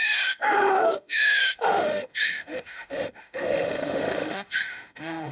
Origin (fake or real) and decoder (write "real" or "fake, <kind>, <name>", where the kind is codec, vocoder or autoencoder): fake, autoencoder, DAC-VAE